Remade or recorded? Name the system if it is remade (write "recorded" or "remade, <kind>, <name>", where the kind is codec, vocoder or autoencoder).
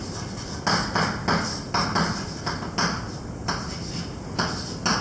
recorded